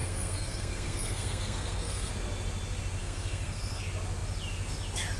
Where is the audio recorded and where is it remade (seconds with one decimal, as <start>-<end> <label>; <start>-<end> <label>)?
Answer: 0.0-2.1 remade; 2.1-3.0 recorded; 3.0-3.8 remade; 3.8-5.2 recorded